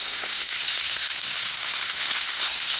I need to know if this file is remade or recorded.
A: remade